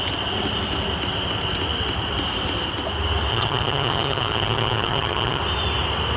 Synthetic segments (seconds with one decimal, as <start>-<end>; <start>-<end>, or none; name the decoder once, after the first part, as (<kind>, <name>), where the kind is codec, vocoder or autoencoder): 3.3-5.4 (vocoder, HiFi-GAN)